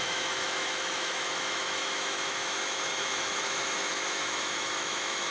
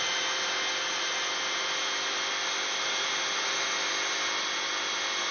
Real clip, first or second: second